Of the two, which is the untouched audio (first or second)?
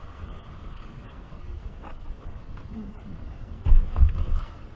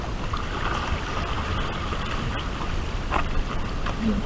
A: second